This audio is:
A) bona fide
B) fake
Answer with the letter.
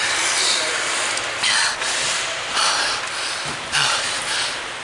A